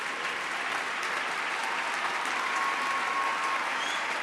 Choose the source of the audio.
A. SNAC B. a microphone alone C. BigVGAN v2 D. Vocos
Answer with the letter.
B